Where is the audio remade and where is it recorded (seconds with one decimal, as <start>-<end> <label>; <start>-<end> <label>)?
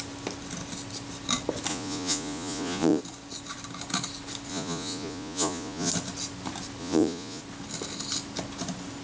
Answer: 0.0-1.7 recorded; 1.7-3.0 remade; 3.0-4.5 recorded; 4.5-5.9 remade; 5.9-6.8 recorded; 6.8-7.4 remade; 7.4-9.0 recorded